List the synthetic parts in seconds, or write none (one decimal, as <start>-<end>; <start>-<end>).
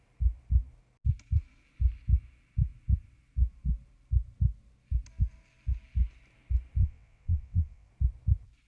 6.8-7.9